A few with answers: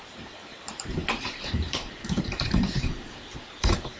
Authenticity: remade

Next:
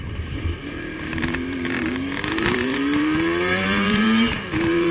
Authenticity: remade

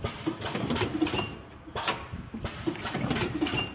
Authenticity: remade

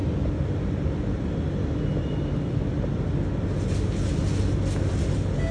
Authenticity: recorded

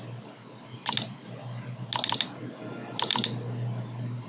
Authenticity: recorded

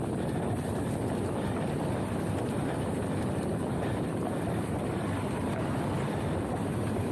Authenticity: recorded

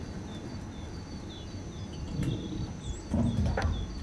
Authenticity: recorded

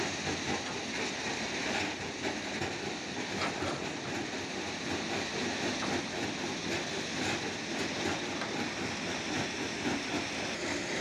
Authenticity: recorded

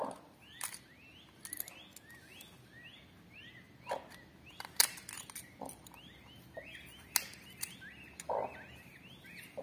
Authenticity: recorded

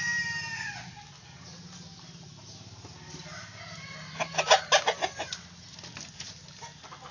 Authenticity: recorded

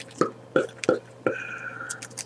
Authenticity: remade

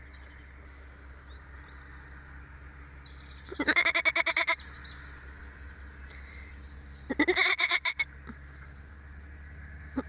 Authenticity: recorded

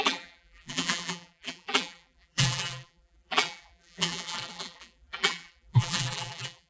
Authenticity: remade